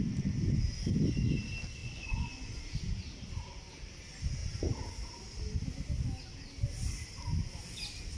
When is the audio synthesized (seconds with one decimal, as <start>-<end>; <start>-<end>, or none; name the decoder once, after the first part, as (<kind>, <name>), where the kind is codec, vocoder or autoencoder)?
1.8-2.6 (vocoder, Vocos)